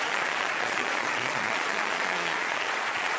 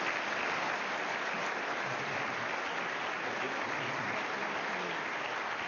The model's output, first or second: first